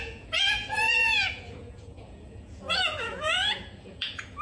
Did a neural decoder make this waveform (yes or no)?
yes